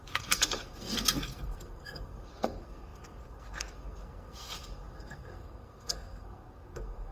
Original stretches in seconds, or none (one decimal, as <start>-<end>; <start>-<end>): none